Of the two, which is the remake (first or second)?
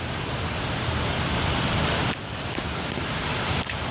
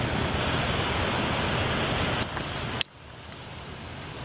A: first